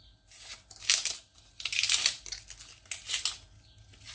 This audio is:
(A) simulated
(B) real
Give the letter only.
B